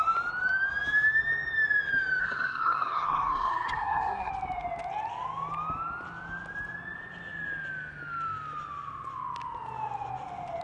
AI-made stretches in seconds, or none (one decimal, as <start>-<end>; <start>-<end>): 2.2-4.3